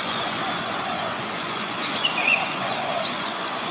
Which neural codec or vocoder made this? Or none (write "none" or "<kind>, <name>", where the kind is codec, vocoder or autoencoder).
vocoder, Vocos